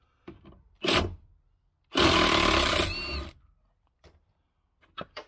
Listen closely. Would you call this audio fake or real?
real